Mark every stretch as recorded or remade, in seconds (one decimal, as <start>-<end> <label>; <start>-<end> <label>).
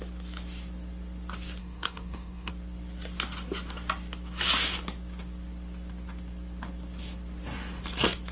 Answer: 0.0-1.6 recorded; 1.6-2.5 remade; 2.5-8.3 recorded